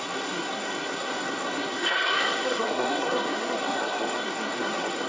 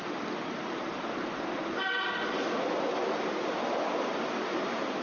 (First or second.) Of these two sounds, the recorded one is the second